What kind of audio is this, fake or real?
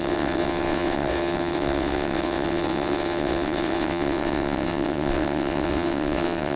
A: fake